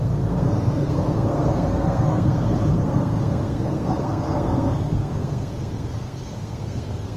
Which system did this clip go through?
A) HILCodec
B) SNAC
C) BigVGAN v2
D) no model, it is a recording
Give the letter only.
B